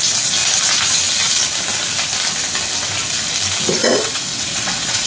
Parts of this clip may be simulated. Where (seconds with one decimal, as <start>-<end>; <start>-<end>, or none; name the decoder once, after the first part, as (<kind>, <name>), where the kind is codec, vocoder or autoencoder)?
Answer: 3.8-5.1 (vocoder, WaveNeXt)